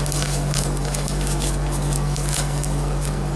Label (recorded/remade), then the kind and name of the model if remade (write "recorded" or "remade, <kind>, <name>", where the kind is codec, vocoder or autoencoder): remade, codec, SNAC